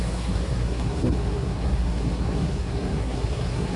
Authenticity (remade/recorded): remade